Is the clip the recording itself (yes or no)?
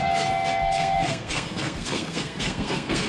no